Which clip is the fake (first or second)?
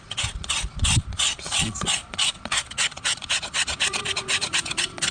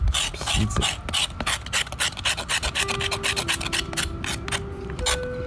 first